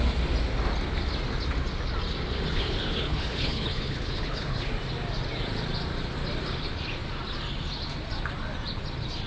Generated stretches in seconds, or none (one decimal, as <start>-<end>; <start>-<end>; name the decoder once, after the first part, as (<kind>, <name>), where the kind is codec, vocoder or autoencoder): 2.5-4.7 (codec, HILCodec)